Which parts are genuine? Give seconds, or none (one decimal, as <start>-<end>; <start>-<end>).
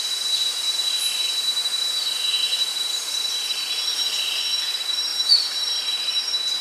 0.0-3.9; 4.4-5.1; 6.1-6.6